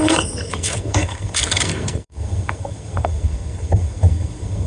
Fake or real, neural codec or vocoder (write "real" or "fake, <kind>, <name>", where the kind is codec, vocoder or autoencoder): fake, codec, SNAC